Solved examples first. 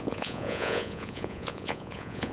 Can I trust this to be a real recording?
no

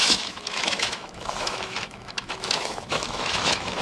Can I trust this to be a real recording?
no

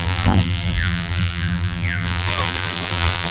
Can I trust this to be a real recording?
no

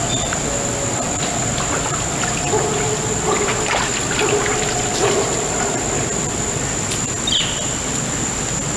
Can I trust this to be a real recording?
yes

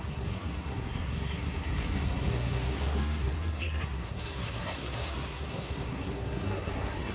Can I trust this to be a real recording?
no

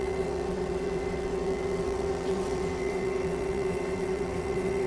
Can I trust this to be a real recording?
no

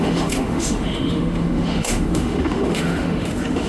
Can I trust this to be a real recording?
no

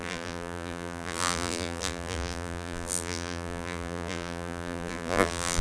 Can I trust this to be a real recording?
no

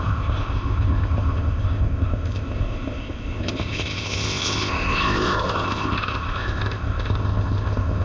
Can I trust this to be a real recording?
no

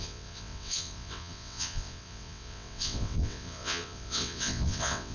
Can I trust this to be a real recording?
no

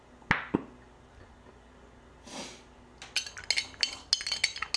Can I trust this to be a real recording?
yes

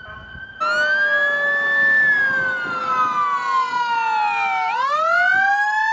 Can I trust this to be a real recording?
yes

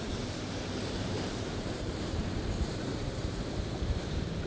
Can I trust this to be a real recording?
no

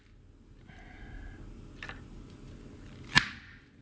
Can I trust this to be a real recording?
yes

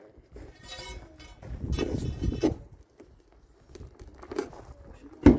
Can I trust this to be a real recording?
yes